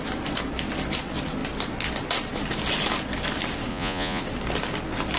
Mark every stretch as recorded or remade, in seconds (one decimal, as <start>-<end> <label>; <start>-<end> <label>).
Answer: 0.0-3.7 recorded; 3.7-4.2 remade; 4.2-5.2 recorded